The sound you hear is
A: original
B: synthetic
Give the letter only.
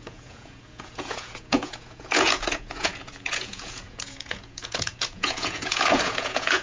B